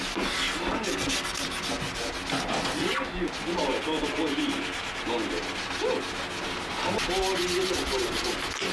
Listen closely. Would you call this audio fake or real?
real